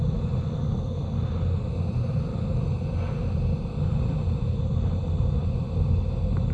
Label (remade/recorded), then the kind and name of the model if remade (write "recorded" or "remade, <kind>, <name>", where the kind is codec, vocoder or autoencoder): recorded